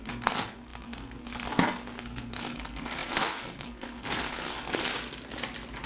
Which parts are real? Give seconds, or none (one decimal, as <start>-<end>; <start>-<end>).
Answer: 4.9-5.9